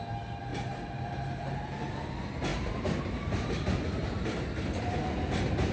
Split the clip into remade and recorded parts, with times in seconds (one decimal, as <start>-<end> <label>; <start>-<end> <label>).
0.0-0.5 recorded; 0.5-1.0 remade; 1.0-2.5 recorded; 2.5-3.2 remade; 3.2-4.0 recorded; 4.0-4.8 remade; 4.8-5.7 recorded